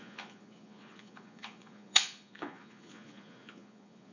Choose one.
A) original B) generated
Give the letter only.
B